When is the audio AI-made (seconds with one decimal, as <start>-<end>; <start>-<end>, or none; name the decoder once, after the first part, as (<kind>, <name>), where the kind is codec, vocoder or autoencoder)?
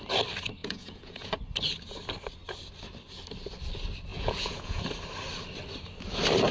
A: 0.6-1.3 (vocoder, Vocos); 4.1-4.8